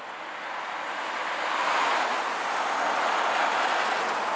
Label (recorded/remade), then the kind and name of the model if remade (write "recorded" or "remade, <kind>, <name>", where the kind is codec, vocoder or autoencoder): recorded